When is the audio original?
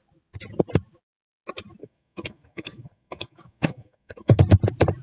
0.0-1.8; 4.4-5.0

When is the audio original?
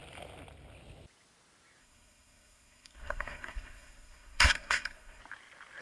0.0-1.8; 5.2-5.8